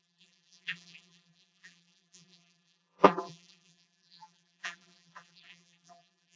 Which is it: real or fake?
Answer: fake